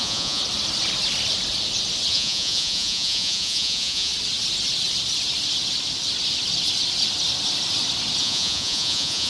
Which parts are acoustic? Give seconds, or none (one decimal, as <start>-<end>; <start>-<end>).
0.4-2.1; 4.1-8.2